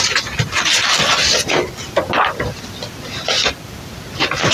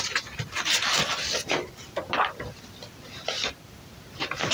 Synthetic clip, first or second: second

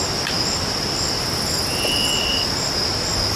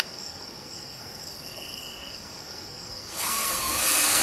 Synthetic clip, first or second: second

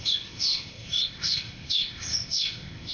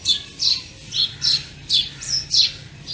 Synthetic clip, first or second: first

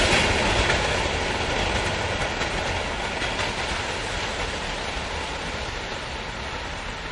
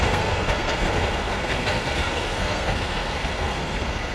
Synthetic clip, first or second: second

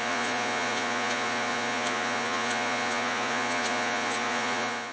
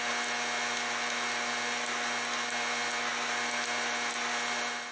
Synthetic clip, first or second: first